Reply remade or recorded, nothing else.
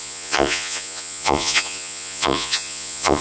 remade